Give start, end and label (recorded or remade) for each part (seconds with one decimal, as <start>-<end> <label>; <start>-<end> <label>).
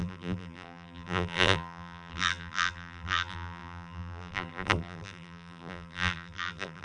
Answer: 0.0-6.8 remade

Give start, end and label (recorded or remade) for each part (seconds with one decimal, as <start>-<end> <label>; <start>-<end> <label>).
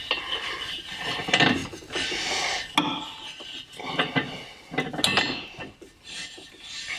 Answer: 0.0-1.6 remade; 1.6-5.8 recorded; 5.8-7.0 remade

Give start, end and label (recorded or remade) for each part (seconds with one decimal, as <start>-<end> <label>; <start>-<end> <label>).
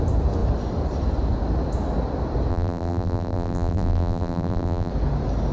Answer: 0.0-2.5 recorded; 2.5-4.9 remade; 4.9-5.5 recorded